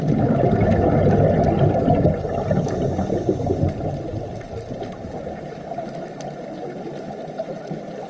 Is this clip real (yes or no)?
yes